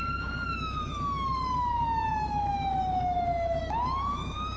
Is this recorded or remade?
remade